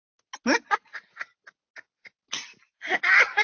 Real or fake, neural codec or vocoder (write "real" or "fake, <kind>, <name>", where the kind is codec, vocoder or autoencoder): real